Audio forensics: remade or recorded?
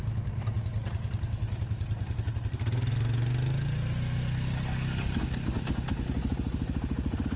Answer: recorded